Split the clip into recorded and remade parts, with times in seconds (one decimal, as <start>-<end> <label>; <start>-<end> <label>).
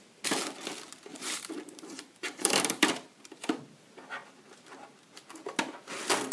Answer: 0.0-1.1 recorded; 1.1-3.6 remade; 3.6-4.2 recorded; 4.2-5.2 remade; 5.2-6.3 recorded